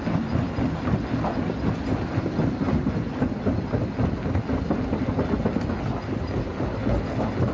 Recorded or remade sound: recorded